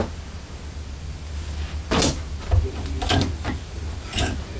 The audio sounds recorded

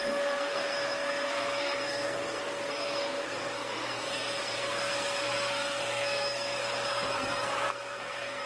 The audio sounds remade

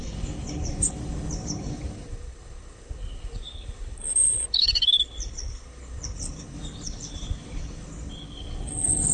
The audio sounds remade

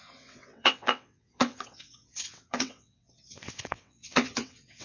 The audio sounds remade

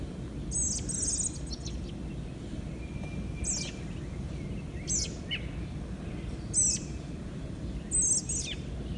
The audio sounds recorded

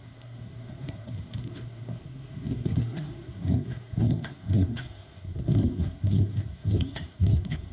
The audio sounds remade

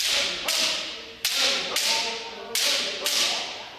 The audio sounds recorded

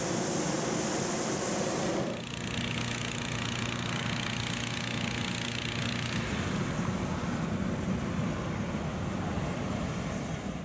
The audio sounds recorded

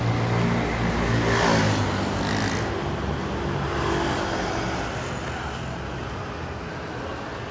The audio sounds recorded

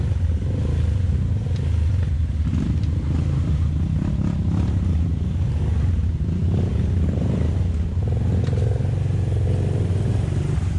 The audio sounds recorded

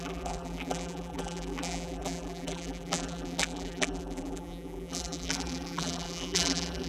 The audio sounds remade